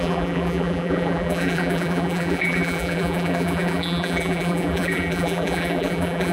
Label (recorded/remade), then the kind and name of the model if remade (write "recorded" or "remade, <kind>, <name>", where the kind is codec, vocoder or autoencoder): remade, vocoder, BigVGAN v2